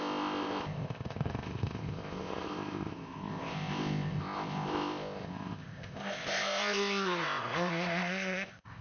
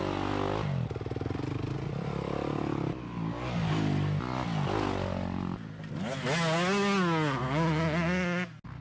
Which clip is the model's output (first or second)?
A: first